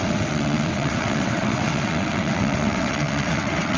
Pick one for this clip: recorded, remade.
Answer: remade